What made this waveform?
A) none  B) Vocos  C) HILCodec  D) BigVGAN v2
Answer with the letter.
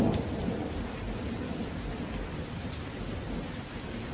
A